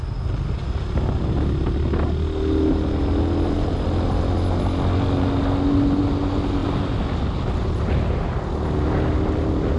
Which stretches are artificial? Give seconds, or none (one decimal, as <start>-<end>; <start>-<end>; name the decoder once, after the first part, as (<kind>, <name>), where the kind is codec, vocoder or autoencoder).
none